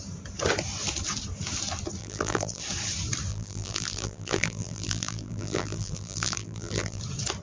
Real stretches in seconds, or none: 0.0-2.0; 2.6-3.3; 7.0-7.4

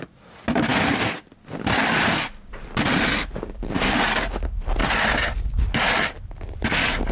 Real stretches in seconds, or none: 0.0-7.1

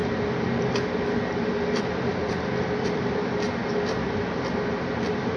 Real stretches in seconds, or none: 3.2-5.4